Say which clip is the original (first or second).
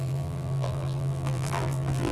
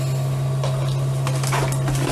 second